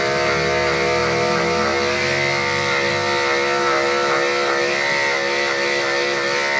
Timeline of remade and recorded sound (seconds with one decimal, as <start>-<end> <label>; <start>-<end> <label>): 0.0-6.6 recorded